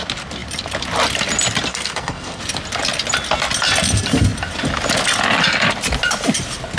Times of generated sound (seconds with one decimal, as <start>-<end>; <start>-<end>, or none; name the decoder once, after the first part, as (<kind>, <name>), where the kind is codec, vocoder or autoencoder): 1.7-2.4 (codec, SNAC)